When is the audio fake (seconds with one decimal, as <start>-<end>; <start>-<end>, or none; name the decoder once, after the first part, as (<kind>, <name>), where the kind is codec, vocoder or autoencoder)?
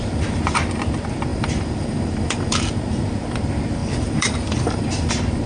1.3-2.7 (vocoder, BigVGAN v2); 3.8-5.1